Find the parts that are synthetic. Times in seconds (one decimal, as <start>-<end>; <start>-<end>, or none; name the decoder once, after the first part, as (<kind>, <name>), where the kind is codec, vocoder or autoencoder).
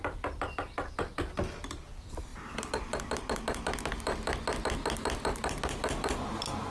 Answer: none